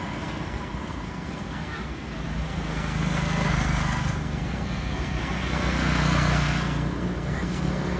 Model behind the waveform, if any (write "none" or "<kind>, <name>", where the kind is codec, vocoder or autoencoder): codec, SNAC